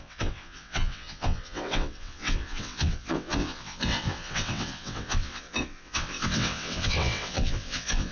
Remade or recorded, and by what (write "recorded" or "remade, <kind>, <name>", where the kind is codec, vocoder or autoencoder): remade, vocoder, WaveNeXt